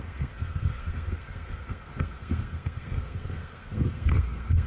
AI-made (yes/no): yes